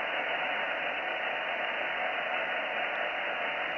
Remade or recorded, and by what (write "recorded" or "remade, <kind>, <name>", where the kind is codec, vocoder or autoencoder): recorded